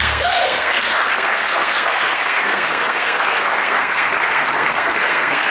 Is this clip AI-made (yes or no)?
yes